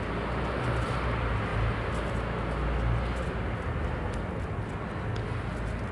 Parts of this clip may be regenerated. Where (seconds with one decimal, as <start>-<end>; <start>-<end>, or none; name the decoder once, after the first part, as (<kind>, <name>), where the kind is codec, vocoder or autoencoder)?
none